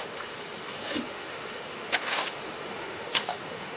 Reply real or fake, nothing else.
fake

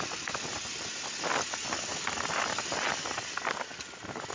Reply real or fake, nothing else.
real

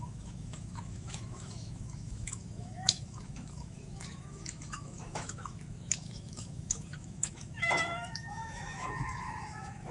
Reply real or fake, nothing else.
fake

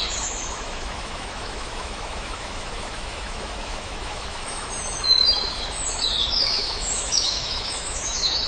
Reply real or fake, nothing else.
fake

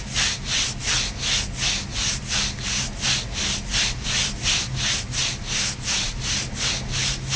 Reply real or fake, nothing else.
real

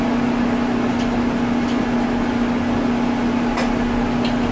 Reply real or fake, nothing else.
real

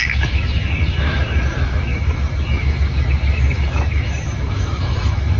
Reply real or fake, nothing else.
fake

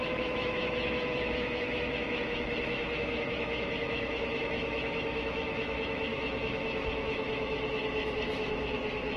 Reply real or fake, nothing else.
fake